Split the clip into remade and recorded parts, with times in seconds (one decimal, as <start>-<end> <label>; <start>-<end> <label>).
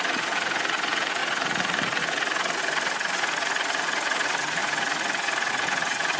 0.0-6.2 remade